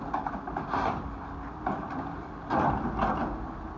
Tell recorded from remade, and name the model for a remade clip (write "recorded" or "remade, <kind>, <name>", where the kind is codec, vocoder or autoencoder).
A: recorded